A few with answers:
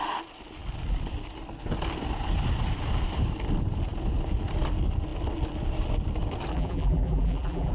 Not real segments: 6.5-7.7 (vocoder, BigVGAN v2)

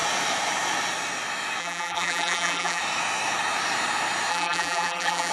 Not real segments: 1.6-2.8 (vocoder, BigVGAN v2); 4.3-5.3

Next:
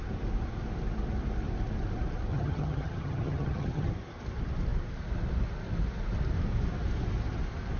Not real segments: 2.3-3.9 (vocoder, HiFi-GAN)

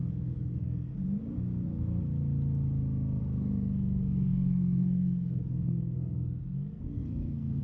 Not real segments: 0.0-1.0 (codec, SNAC); 3.2-7.6